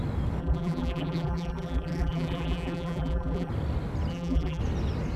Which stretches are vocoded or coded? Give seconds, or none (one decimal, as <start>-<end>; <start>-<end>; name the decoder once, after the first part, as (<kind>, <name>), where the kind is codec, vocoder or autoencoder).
0.4-3.5 (vocoder, BigVGAN v2); 4.1-4.6